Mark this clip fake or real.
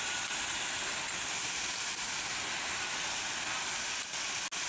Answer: real